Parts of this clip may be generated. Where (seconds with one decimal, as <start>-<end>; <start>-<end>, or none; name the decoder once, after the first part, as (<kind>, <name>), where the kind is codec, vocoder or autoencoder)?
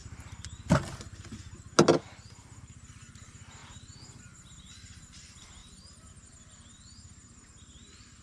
5.6-6.3 (vocoder, BigVGAN v2)